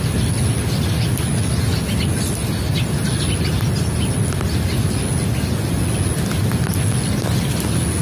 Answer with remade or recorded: recorded